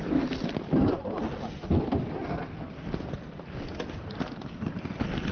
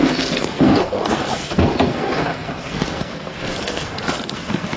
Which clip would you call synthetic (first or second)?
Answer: second